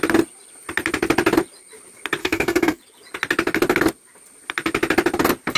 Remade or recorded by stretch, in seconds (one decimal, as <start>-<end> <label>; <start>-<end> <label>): 0.0-2.2 recorded; 2.2-2.8 remade; 2.8-5.6 recorded